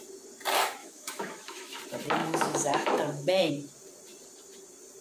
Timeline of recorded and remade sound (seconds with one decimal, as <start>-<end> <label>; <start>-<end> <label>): 0.0-0.8 recorded; 0.8-1.8 remade; 1.8-2.2 recorded; 2.2-3.5 remade; 3.5-5.0 recorded

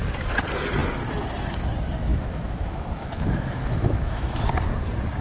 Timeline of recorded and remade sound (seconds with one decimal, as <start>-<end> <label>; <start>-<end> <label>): 0.0-2.1 recorded; 2.1-4.4 remade; 4.4-5.2 recorded